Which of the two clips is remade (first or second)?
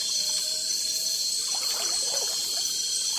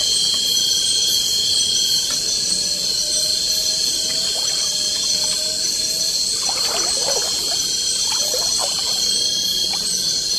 first